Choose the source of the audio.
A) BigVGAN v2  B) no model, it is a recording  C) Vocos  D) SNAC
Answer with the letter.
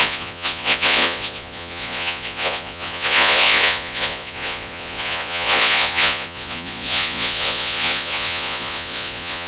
C